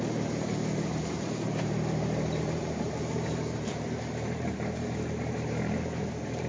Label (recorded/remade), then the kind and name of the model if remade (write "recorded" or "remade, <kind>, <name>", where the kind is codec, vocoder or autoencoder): remade, vocoder, BigVGAN v2